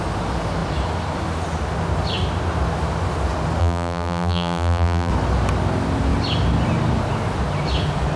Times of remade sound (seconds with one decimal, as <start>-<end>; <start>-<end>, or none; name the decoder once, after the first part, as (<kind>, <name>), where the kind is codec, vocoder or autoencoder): 3.6-5.1 (vocoder, BigVGAN v2)